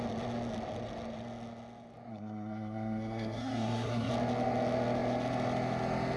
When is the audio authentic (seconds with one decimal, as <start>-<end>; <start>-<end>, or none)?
0.0-2.1; 4.1-6.2

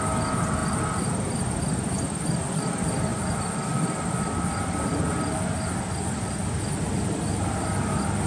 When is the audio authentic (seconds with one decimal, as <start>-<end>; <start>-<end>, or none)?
0.0-8.3

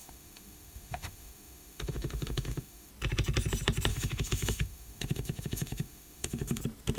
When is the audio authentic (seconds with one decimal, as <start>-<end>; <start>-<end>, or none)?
2.9-3.9; 6.6-7.0

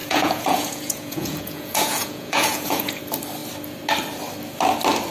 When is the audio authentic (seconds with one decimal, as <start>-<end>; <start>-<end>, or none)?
3.0-5.1

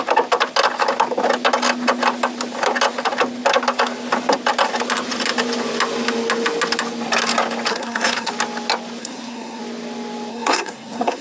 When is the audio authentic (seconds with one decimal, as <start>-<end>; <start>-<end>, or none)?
0.0-7.7; 8.3-9.0; 9.6-10.3

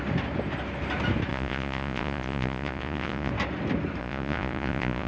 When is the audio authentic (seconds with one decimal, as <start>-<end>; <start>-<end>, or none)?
0.0-1.3; 3.3-4.0